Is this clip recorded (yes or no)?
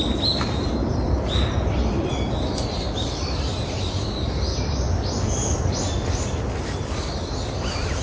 yes